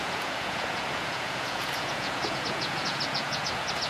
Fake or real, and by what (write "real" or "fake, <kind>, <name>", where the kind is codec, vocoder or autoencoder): fake, vocoder, Vocos